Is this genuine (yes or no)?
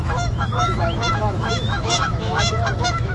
no